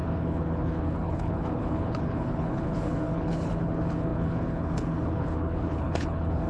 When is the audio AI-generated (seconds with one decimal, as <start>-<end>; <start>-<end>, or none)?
0.0-6.5